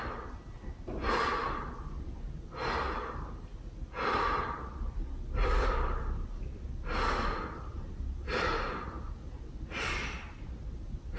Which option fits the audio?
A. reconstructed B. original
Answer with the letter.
B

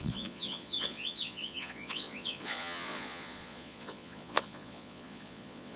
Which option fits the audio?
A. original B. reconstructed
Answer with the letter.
B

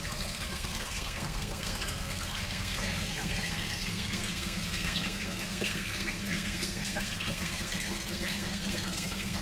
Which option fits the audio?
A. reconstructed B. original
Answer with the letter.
A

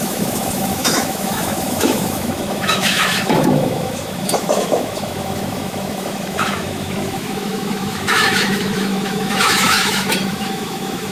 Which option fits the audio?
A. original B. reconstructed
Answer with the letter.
B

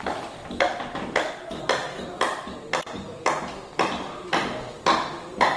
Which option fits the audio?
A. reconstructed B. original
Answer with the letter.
B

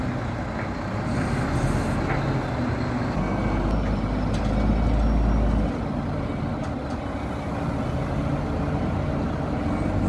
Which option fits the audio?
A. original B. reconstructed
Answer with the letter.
A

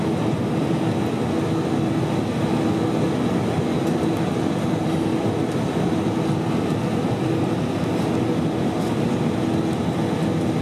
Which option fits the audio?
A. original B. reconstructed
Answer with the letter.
A